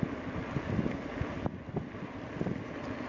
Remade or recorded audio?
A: recorded